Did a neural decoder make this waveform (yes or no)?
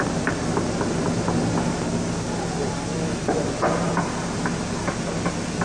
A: no